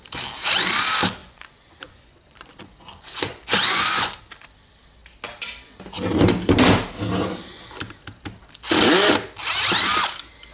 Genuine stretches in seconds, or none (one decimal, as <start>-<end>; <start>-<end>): 0.0-1.2; 4.2-10.5

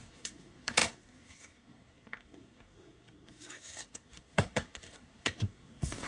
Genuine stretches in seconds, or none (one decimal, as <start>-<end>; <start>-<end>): none

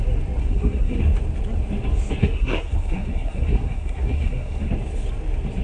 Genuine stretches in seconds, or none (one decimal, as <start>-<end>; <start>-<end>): 0.0-0.4; 1.0-2.2; 4.7-5.6

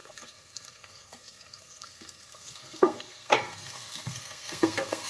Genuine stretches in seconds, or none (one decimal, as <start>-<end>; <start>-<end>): none

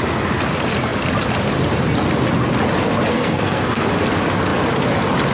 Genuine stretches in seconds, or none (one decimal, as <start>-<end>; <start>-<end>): 0.0-3.1; 3.9-5.3

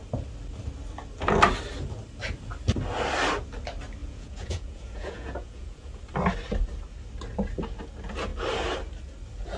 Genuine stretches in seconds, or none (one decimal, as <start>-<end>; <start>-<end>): 0.0-4.0; 6.0-9.6

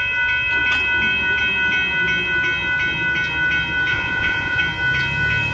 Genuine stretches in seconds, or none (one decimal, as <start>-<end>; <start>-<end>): 0.0-3.9; 4.6-5.5